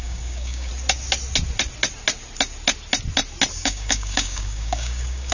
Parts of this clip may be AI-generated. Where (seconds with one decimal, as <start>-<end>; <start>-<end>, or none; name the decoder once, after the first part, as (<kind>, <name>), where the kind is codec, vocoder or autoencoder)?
0.0-0.7 (codec, DAC); 3.5-5.3